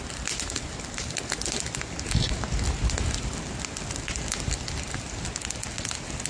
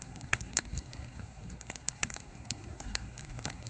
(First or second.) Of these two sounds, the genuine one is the first